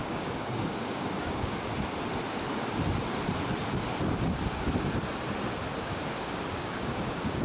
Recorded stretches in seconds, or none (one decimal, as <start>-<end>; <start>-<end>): 1.7-5.8